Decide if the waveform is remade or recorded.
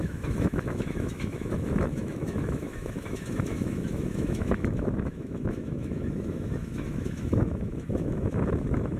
remade